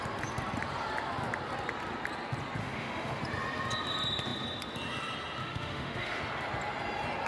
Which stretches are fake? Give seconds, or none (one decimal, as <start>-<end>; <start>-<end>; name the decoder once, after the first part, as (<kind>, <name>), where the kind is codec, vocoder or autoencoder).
2.6-3.2 (autoencoder, DAC-VAE); 5.4-6.2